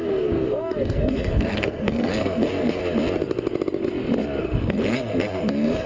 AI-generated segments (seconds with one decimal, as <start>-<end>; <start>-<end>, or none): 0.0-2.8; 4.4-5.9